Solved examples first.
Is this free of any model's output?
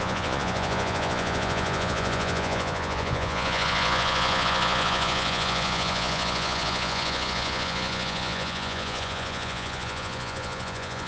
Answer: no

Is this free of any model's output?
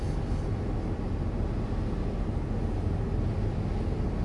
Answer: yes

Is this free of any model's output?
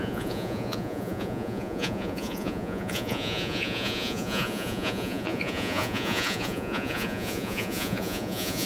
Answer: no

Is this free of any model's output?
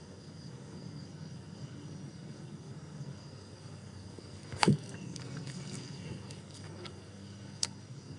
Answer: no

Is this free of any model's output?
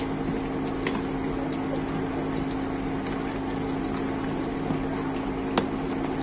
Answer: yes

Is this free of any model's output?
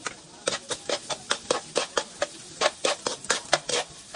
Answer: yes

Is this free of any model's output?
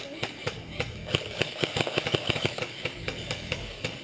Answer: no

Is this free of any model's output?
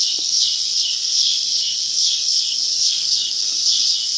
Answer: no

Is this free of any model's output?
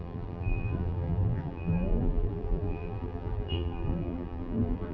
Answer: no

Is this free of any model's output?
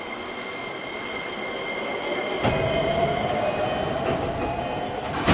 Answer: yes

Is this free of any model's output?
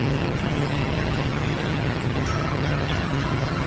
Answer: no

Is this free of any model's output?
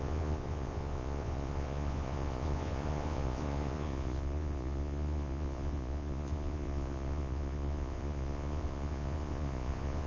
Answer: no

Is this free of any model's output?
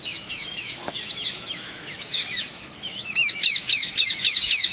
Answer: no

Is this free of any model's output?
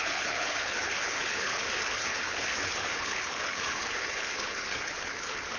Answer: no